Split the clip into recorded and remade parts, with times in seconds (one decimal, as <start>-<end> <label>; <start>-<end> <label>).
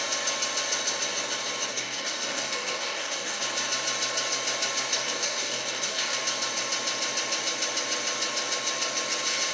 0.0-1.7 recorded; 1.7-3.4 remade; 3.4-4.9 recorded; 4.9-6.2 remade; 6.2-9.5 recorded